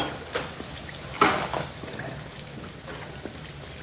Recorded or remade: recorded